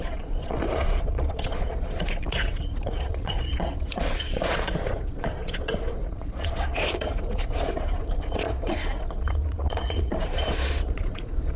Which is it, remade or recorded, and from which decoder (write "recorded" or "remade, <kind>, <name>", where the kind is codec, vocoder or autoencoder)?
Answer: remade, vocoder, Vocos